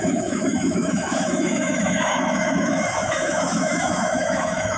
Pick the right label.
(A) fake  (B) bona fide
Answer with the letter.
A